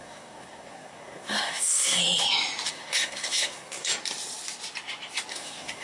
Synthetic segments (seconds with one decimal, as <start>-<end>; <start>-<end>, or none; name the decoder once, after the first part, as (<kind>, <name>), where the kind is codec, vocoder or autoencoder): 0.0-2.0 (codec, SNAC); 2.7-3.9; 5.3-5.8